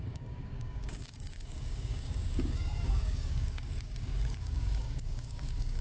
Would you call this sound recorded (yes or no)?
no